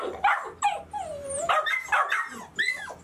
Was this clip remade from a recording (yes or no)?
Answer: no